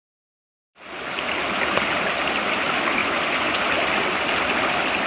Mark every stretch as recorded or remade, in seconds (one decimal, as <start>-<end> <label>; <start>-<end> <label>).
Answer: 0.0-3.0 recorded; 3.0-3.6 remade; 3.6-5.1 recorded